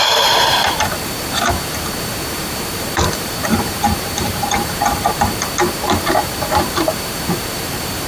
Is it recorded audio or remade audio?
remade